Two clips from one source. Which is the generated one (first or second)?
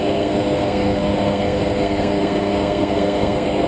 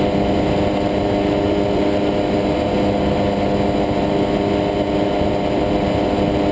first